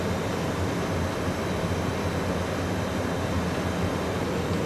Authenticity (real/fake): real